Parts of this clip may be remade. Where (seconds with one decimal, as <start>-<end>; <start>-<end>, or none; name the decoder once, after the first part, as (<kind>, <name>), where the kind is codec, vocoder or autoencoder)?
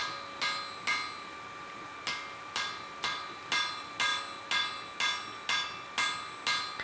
none